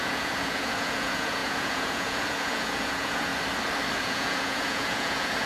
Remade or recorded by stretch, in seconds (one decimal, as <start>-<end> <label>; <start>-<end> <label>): 0.0-3.3 remade; 3.3-4.0 recorded; 4.0-5.5 remade